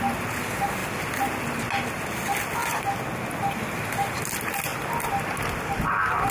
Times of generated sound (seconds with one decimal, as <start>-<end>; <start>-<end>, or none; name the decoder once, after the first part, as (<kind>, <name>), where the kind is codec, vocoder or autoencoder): 0.8-1.6 (vocoder, BigVGAN v2); 4.7-5.7